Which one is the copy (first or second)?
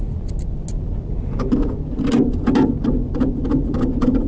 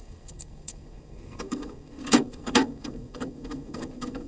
second